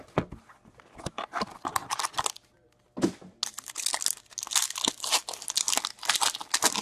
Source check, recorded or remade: recorded